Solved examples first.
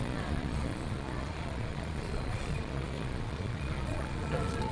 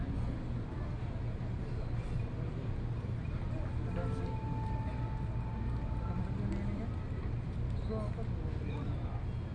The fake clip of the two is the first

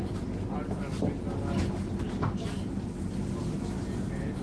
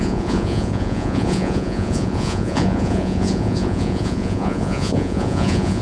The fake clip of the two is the second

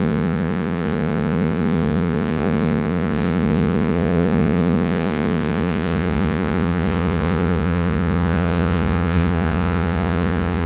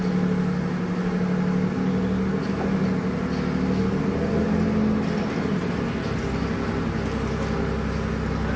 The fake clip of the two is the first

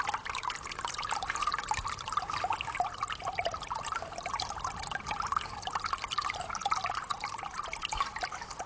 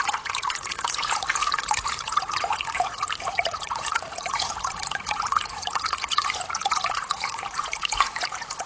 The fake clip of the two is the second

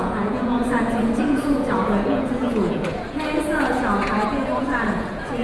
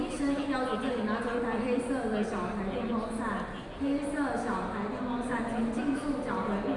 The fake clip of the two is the first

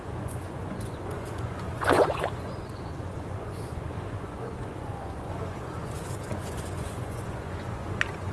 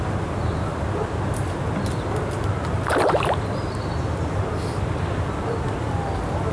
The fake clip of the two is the first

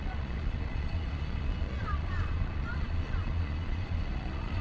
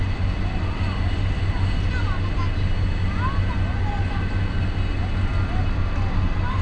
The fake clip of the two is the first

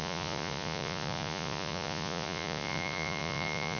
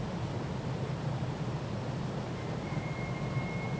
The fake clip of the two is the first